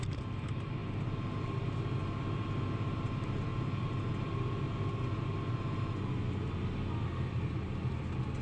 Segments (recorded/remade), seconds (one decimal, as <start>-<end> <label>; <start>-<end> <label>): 0.0-0.8 remade; 0.8-2.0 recorded; 2.0-3.5 remade; 3.5-7.3 recorded; 7.3-8.4 remade